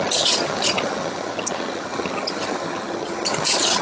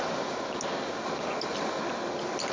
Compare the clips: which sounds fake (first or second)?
first